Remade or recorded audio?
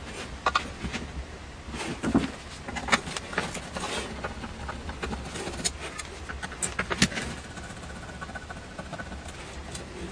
recorded